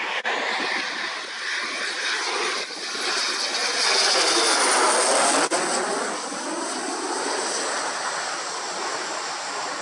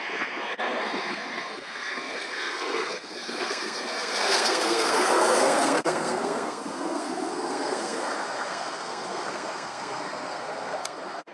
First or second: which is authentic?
first